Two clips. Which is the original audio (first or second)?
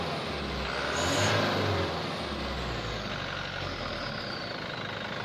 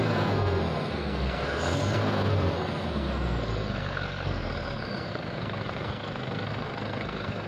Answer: first